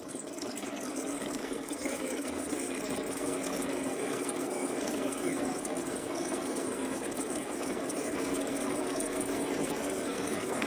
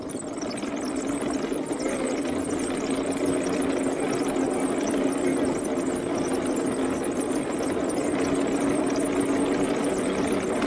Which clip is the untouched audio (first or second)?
second